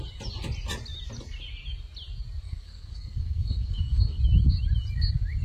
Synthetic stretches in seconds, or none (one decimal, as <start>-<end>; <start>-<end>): 2.5-4.2